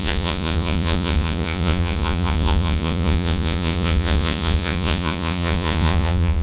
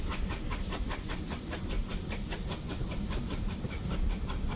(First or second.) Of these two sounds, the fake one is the first